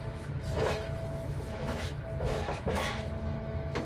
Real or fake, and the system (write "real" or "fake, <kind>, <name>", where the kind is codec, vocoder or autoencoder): fake, autoencoder, DAC-VAE